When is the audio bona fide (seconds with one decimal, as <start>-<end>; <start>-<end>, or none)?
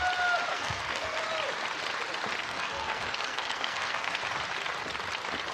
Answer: 0.0-0.5; 1.2-2.4; 4.2-5.5